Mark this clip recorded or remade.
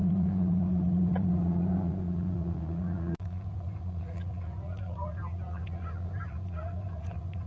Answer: remade